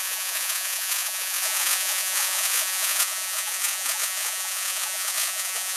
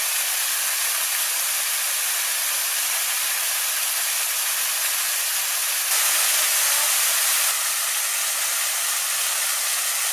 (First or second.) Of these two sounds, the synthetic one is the first